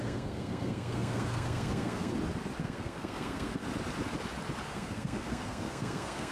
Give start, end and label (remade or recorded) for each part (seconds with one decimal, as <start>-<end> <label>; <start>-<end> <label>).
0.0-2.1 remade; 2.1-2.6 recorded; 2.6-3.6 remade; 3.6-4.7 recorded; 4.7-6.3 remade